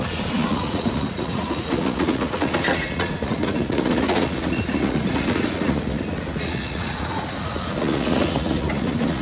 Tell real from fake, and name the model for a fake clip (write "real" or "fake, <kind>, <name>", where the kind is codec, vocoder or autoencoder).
fake, vocoder, Vocos